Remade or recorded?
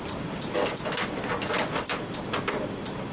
recorded